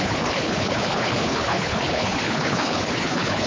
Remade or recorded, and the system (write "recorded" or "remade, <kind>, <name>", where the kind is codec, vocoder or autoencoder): remade, codec, HILCodec